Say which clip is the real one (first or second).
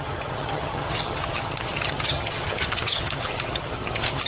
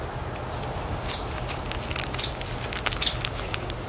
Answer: second